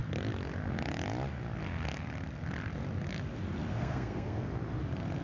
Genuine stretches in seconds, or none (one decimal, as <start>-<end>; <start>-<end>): 0.0-3.7; 4.4-5.2